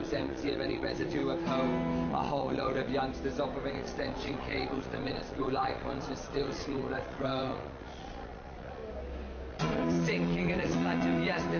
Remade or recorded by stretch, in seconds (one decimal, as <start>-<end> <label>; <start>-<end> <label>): 0.0-1.2 remade; 1.2-2.1 recorded; 2.1-2.9 remade; 2.9-3.7 recorded; 3.7-8.8 remade; 8.8-9.5 recorded; 9.5-11.6 remade